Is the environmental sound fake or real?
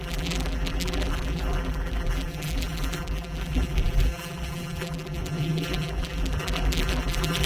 fake